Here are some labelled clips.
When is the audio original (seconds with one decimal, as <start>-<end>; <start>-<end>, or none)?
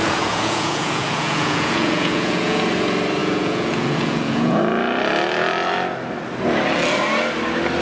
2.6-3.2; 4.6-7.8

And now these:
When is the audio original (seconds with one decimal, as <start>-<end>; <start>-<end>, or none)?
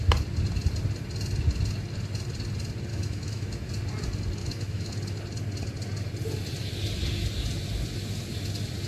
0.0-2.9; 3.7-4.4; 4.9-8.9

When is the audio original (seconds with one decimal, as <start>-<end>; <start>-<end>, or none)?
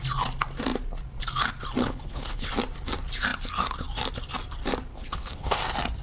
0.0-1.8; 2.5-4.9; 5.6-6.0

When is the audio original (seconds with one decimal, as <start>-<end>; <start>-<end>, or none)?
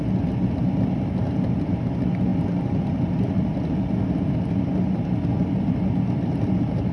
0.0-2.3; 4.3-6.9